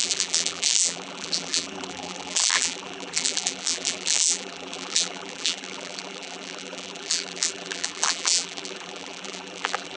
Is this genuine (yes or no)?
no